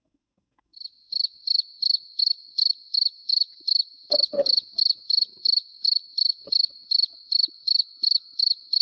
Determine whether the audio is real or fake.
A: fake